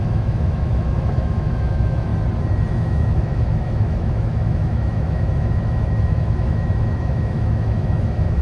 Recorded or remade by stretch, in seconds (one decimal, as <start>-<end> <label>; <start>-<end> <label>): 0.0-2.1 remade; 2.1-2.7 recorded; 2.7-8.4 remade